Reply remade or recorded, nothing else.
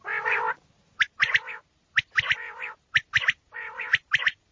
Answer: recorded